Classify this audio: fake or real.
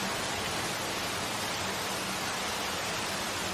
real